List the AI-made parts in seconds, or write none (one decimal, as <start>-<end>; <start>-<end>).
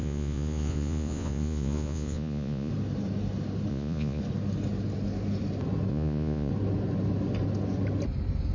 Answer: 0.0-2.7; 3.7-4.2; 5.9-6.5